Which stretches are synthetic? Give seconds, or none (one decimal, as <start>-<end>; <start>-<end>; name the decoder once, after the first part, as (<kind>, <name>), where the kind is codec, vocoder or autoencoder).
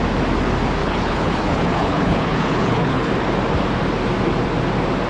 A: 0.8-3.1 (codec, HILCodec)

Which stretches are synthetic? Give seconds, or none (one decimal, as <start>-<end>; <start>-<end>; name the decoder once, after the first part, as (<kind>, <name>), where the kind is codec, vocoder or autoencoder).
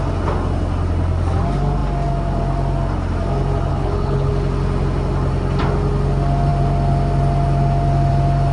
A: 3.7-4.3 (codec, HILCodec)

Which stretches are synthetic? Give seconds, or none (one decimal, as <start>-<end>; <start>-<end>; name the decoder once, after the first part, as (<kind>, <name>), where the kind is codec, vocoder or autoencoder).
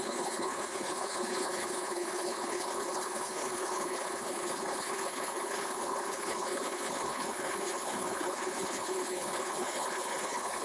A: 0.0-10.6 (codec, HILCodec)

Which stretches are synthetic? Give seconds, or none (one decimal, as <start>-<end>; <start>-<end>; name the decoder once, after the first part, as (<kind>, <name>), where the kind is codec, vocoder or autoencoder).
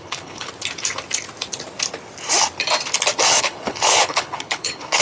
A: 0.0-0.5 (codec, HILCodec); 3.4-5.0